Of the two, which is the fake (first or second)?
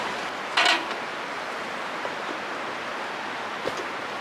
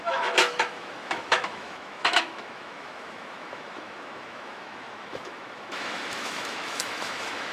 second